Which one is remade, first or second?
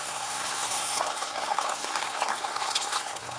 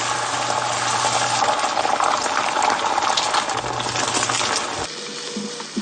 first